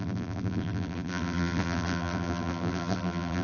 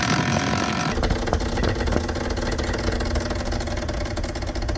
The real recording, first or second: second